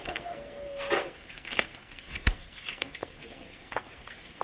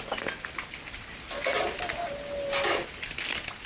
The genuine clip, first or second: second